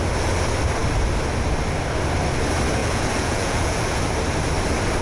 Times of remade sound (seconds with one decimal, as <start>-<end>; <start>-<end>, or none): 2.8-4.0